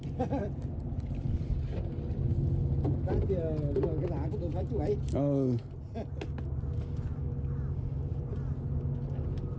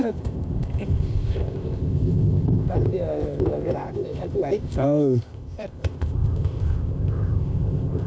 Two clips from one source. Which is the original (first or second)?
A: first